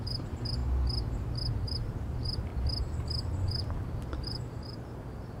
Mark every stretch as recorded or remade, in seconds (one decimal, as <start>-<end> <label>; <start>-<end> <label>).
0.0-0.6 remade; 0.6-1.6 recorded; 1.6-2.5 remade; 2.5-3.4 recorded; 3.4-5.4 remade